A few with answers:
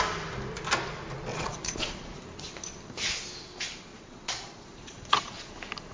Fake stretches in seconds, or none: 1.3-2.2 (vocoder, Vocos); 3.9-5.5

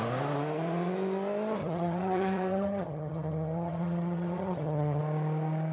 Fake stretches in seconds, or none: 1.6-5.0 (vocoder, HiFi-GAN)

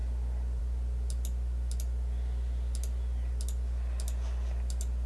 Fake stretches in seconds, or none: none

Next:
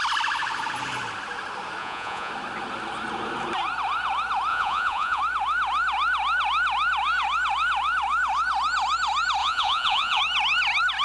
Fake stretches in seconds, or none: 1.8-2.3 (vocoder, Vocos); 4.5-5.2; 9.4-10.2

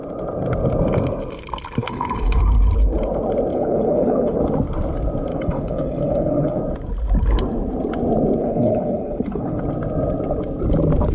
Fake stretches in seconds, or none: 1.8-2.4 (codec, HILCodec); 3.5-4.4; 5.3-6.6; 8.4-9.6